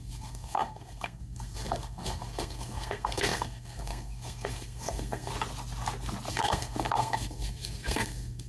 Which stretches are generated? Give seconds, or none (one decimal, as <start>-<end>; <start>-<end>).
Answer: 0.0-5.3; 6.3-8.5